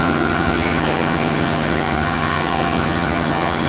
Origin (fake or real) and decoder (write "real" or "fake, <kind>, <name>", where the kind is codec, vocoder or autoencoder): fake, vocoder, HiFi-GAN